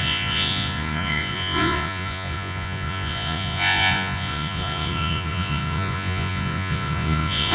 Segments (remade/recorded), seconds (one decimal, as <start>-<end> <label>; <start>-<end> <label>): 0.0-7.5 remade